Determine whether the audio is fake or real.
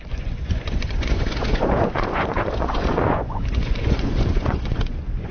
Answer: fake